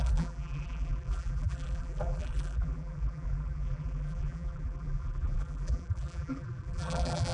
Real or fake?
fake